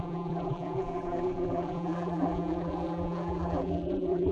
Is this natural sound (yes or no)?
no